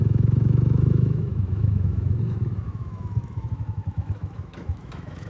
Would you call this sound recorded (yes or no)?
no